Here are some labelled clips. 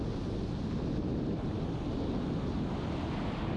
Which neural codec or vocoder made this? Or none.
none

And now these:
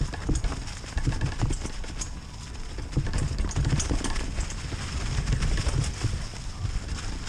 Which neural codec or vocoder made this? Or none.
none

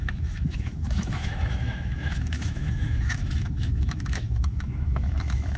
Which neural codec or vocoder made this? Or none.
autoencoder, DAC-VAE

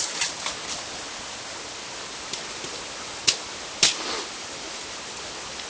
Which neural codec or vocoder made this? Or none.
none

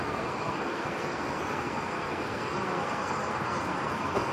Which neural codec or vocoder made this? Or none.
codec, SNAC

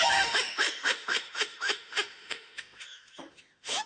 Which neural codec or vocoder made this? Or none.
autoencoder, DAC-VAE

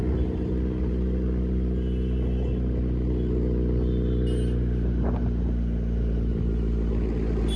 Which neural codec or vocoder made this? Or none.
none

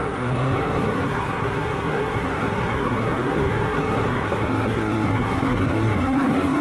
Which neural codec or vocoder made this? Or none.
codec, SNAC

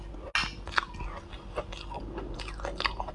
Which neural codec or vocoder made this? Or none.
none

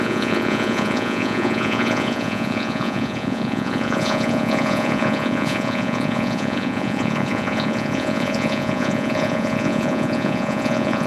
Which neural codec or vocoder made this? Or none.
vocoder, Vocos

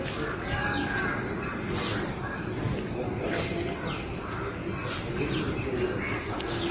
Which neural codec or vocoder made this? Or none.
none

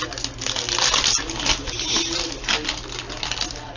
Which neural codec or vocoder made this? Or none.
none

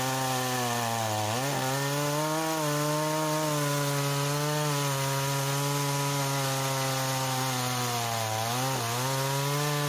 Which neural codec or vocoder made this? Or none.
none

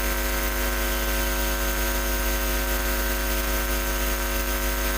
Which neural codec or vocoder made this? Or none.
none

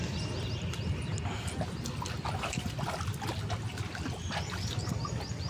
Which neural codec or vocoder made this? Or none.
none